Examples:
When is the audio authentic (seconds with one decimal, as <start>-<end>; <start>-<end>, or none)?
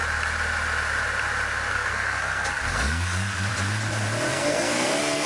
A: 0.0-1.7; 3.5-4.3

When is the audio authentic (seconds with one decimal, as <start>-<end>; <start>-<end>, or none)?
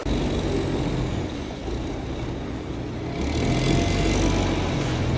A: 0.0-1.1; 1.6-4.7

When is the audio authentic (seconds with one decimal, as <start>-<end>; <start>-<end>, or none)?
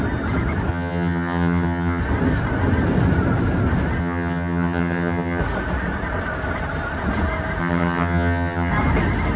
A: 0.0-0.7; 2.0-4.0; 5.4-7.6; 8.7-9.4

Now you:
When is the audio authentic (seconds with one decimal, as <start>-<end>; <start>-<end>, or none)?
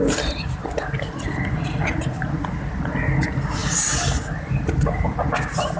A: 0.0-5.8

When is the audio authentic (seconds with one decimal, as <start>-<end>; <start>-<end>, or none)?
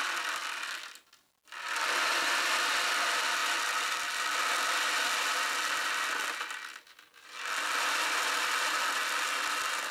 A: 0.0-9.9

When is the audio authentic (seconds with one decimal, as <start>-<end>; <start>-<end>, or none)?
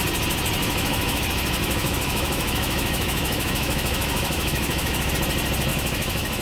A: 0.0-0.6; 1.2-1.6; 5.1-5.7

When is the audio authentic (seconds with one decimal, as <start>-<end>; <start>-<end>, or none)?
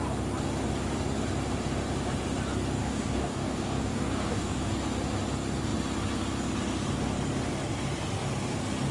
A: 0.0-2.8; 4.7-8.9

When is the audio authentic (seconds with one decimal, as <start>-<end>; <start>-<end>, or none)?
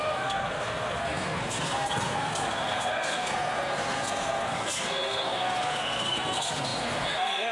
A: none